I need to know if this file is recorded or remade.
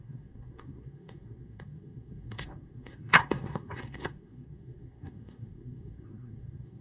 remade